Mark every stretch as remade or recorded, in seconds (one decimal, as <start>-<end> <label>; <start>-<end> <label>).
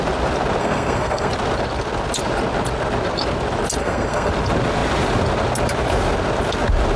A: 0.0-0.6 recorded; 0.6-1.3 remade; 1.3-3.8 recorded; 3.8-4.3 remade; 4.3-7.0 recorded